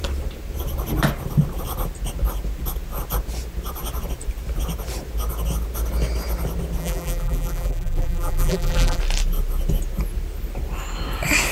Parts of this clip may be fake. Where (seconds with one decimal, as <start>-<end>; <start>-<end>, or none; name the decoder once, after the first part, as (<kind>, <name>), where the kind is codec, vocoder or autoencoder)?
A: 6.8-9.0 (vocoder, BigVGAN v2)